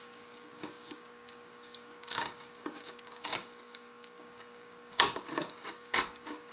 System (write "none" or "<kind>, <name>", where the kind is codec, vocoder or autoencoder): codec, DAC